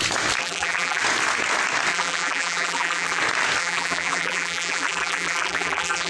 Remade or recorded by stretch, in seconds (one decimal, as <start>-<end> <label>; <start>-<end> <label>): 0.0-0.4 recorded; 0.4-1.0 remade; 1.0-1.9 recorded; 1.9-3.2 remade; 3.2-3.6 recorded; 3.6-6.1 remade